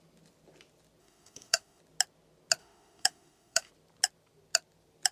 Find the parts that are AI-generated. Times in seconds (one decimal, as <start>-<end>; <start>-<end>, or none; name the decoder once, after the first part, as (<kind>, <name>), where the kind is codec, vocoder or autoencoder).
1.0-1.8 (autoencoder, DAC-VAE); 2.6-3.7